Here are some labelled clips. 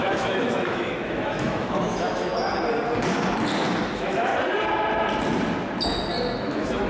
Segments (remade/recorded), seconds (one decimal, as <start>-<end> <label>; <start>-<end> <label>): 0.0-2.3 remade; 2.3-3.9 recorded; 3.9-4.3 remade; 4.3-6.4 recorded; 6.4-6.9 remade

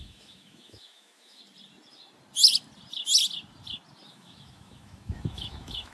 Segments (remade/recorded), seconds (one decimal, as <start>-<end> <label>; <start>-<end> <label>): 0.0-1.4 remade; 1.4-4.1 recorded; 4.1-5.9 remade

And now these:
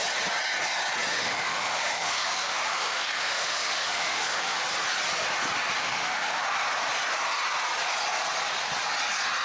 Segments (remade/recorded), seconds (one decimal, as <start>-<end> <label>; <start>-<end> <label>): 0.0-1.1 recorded; 1.1-4.6 remade; 4.6-5.8 recorded; 5.8-6.4 remade; 6.4-9.4 recorded

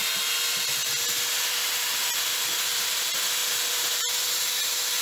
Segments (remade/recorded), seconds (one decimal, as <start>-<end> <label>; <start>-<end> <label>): 0.0-5.0 recorded

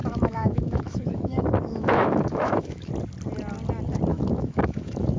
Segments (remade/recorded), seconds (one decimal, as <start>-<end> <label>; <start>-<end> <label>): 0.0-2.9 remade; 2.9-4.1 recorded; 4.1-5.2 remade